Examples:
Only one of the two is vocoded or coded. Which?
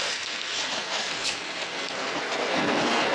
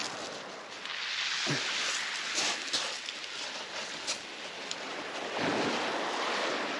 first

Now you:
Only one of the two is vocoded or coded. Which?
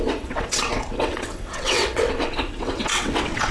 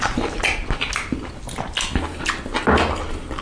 first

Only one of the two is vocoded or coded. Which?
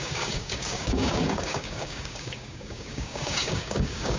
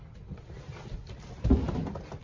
first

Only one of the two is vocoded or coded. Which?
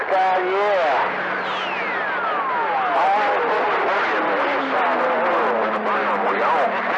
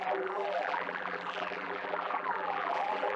second